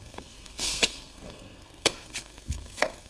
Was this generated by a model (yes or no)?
yes